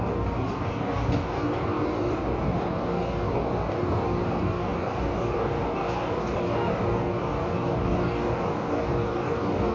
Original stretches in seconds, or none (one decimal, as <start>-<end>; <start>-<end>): none